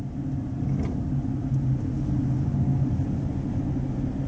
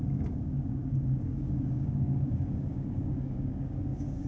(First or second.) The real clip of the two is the first